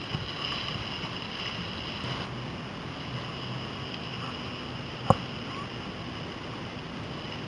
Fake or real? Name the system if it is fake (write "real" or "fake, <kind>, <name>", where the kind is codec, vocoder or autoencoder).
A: real